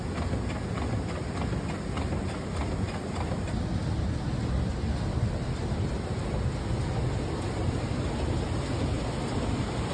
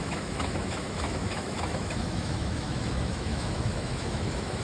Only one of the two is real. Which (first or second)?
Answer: first